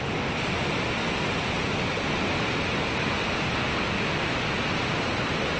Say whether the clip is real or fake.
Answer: real